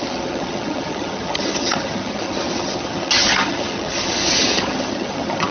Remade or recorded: remade